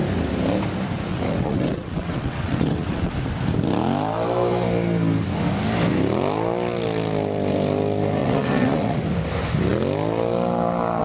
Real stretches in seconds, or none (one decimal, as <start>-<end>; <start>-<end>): 0.0-1.1; 3.1-8.2; 9.0-11.0

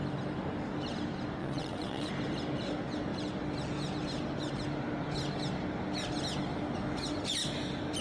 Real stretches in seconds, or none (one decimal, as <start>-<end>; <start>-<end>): 0.0-1.4; 2.1-8.0